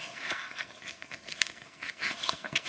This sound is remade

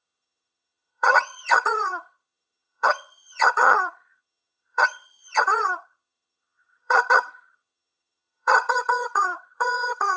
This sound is remade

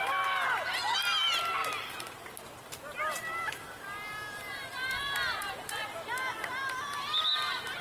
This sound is recorded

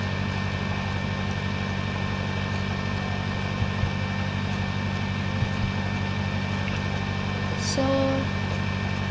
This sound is recorded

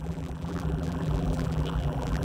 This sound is remade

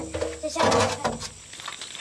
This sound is recorded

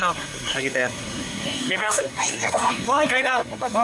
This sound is remade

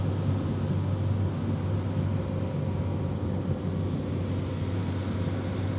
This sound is recorded